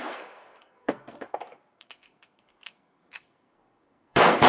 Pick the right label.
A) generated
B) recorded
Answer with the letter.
A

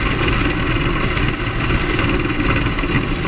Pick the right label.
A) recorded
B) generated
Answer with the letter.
A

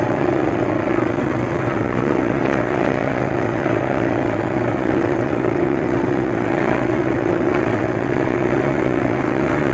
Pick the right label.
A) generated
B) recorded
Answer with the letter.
A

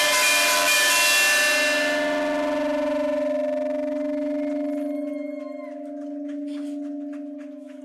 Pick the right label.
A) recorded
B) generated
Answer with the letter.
A